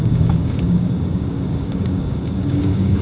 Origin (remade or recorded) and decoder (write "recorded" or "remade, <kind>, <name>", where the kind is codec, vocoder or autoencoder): remade, codec, DAC